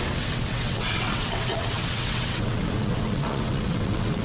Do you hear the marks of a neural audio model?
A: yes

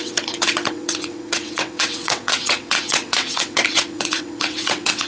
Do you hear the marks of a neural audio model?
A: yes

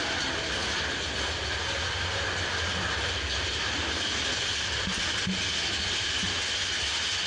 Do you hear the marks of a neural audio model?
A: no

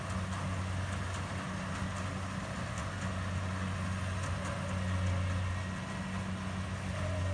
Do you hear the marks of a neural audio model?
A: no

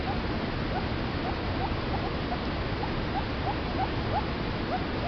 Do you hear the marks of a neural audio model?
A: no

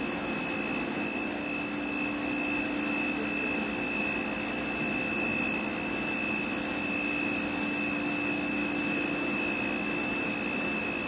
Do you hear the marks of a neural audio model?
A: no